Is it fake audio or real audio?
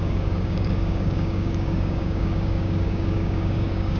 fake